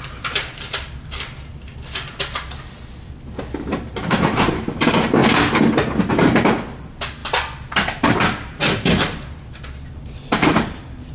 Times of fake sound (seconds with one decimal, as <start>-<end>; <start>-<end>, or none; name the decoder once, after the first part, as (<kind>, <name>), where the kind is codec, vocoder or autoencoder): 0.0-1.5 (vocoder, BigVGAN v2); 3.7-5.2; 6.1-7.2; 10.0-11.1